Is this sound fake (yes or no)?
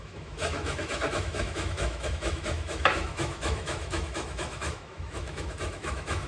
yes